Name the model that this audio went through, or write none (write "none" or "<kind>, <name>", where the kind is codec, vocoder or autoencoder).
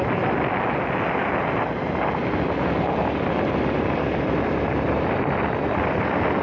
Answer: none